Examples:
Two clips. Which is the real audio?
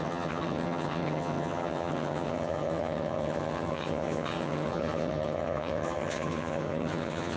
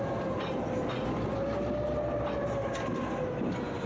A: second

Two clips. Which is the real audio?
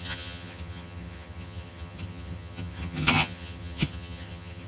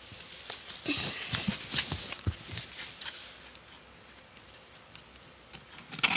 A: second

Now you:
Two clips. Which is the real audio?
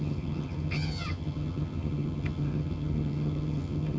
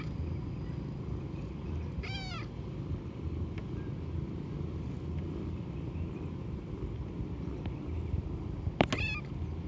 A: second